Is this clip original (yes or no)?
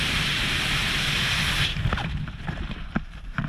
no